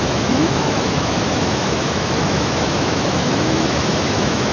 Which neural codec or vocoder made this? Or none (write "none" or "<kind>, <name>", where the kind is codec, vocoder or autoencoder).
autoencoder, DAC-VAE